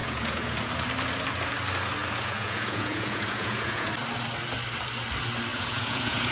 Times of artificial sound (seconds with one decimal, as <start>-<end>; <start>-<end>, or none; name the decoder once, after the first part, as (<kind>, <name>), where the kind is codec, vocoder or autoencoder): 0.0-0.7 (vocoder, Vocos); 2.0-3.9; 5.5-6.3